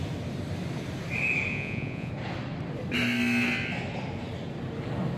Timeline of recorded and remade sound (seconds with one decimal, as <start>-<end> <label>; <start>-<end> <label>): 0.0-1.5 recorded; 1.5-2.1 remade; 2.1-5.2 recorded